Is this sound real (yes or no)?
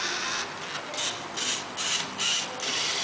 yes